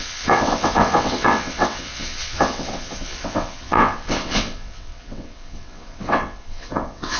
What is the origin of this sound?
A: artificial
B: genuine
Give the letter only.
A